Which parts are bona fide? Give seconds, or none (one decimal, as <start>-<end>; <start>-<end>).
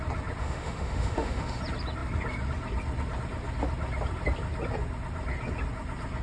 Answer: 0.0-0.4; 1.6-6.2